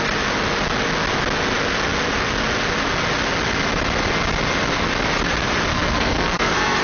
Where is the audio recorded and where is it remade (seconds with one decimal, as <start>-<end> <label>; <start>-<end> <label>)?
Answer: 0.0-5.7 recorded; 5.7-6.8 remade